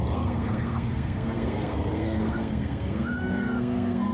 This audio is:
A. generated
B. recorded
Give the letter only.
A